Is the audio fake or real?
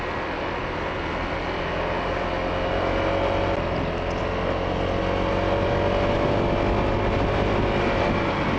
real